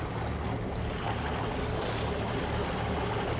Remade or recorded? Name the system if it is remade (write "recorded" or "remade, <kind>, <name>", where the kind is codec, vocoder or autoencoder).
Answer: recorded